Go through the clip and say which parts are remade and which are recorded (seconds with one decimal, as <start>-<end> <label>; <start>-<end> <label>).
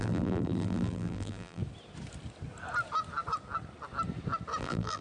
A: 0.0-1.6 remade; 1.6-4.6 recorded; 4.6-5.0 remade